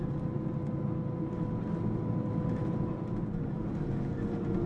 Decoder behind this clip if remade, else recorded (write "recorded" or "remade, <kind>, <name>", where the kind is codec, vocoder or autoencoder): recorded